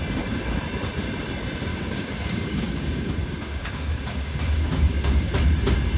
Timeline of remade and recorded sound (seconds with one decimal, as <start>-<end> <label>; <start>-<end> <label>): 0.0-1.7 recorded; 1.7-5.3 remade; 5.3-6.0 recorded